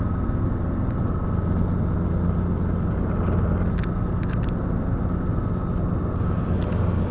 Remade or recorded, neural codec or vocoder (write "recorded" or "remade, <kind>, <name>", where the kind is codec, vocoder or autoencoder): recorded